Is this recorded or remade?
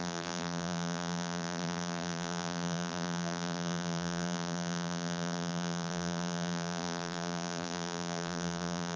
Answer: remade